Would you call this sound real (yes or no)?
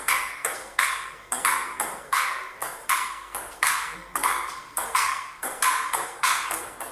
no